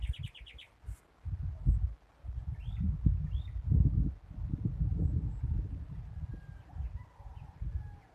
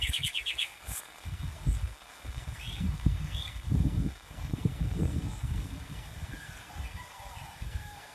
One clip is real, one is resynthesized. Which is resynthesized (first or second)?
second